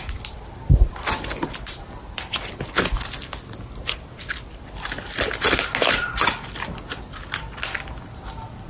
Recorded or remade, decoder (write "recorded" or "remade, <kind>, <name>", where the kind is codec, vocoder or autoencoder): recorded